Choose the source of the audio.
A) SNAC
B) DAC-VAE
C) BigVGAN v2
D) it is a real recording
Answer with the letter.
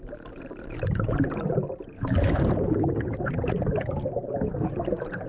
C